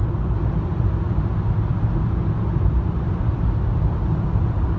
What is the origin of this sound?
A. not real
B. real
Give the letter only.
B